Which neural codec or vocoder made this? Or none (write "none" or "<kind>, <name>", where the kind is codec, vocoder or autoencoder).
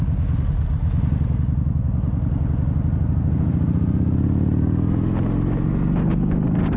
none